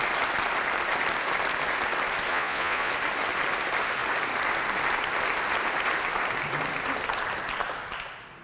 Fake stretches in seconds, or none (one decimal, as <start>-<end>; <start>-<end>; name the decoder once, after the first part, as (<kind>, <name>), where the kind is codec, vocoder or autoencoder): 2.3-2.9 (vocoder, Vocos)